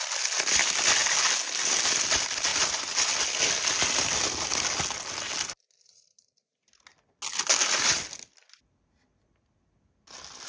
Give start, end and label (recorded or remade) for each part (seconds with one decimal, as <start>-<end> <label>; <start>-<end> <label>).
0.0-10.5 recorded